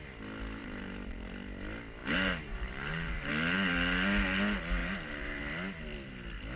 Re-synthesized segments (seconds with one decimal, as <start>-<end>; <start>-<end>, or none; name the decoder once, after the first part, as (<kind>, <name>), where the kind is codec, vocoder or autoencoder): 0.6-1.3 (vocoder, BigVGAN v2); 2.0-3.3; 4.8-5.4

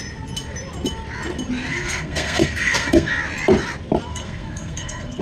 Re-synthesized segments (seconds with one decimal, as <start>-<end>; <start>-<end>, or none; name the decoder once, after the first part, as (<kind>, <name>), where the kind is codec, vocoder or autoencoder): 1.7-3.1 (codec, SNAC); 4.1-5.2